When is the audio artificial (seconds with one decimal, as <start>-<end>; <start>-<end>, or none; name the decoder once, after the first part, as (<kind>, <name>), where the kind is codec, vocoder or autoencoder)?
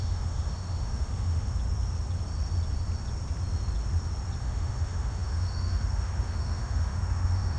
0.0-1.5 (autoencoder, DAC-VAE); 4.4-7.6